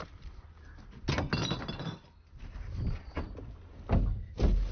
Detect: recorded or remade recorded